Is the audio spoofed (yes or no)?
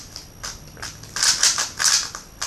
no